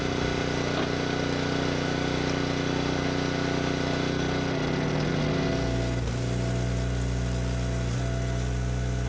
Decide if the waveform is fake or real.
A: real